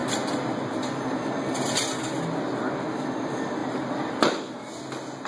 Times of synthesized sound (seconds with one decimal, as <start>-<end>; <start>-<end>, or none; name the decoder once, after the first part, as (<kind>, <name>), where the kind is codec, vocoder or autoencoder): none